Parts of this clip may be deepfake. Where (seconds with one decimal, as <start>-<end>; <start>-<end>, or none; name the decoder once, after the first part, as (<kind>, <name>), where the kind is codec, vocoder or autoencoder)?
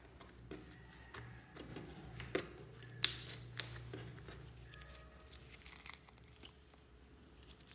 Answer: 1.7-2.4 (vocoder, BigVGAN v2)